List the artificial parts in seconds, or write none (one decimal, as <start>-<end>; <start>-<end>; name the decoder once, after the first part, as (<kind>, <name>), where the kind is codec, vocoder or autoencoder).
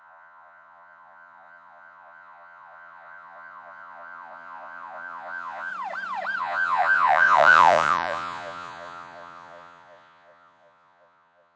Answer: 0.0-5.7 (vocoder, Vocos); 6.4-11.6